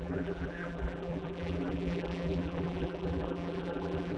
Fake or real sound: fake